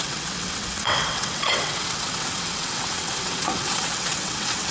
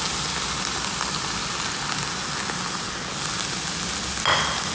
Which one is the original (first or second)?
second